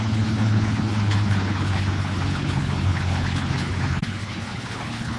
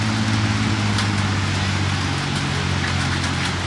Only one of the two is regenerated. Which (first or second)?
first